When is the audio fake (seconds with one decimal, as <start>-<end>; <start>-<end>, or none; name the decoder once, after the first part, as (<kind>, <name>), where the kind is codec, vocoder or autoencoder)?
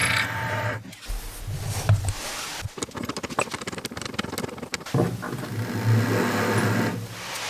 none